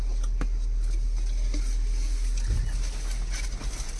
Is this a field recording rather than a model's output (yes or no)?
yes